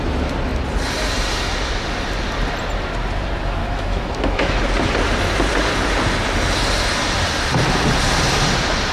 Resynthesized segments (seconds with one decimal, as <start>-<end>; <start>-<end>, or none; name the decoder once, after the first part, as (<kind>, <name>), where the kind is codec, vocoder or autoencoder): 3.6-4.6 (autoencoder, DAC-VAE)

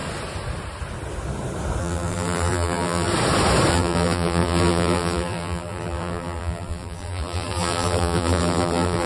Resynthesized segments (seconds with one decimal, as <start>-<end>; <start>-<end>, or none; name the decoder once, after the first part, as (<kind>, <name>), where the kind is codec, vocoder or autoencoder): 1.8-3.1 (vocoder, BigVGAN v2); 3.7-9.1

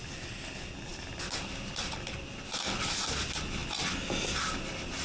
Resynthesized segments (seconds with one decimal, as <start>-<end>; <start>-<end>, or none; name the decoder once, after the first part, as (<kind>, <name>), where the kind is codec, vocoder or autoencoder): none